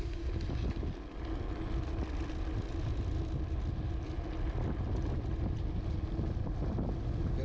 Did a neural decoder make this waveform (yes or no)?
no